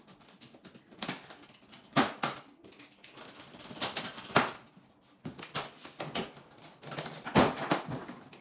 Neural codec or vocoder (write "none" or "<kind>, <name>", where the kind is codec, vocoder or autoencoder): none